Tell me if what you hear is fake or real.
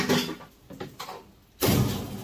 real